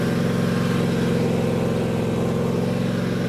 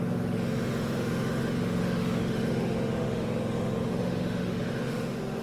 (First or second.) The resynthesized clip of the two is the second